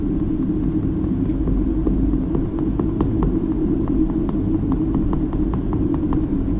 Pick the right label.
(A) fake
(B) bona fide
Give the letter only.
A